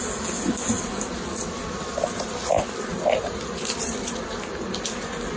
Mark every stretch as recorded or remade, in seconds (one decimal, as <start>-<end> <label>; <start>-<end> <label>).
0.0-5.4 recorded